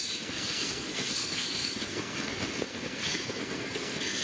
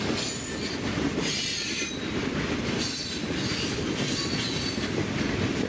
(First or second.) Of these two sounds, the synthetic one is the first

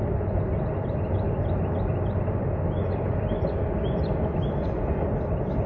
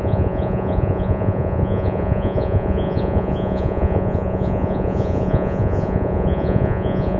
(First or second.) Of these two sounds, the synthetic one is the second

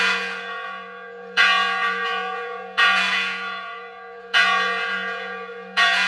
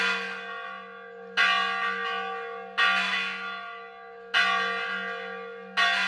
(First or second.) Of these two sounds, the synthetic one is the first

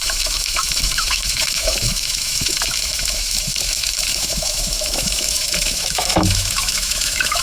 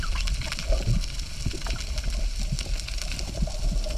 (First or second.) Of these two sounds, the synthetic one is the first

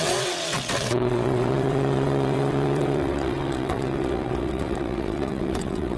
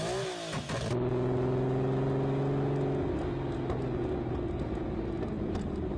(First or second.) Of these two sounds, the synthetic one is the first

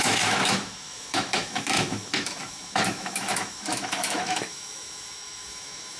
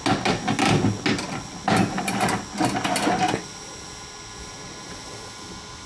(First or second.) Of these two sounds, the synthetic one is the first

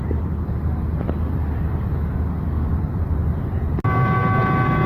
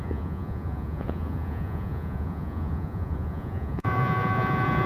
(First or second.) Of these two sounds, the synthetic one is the second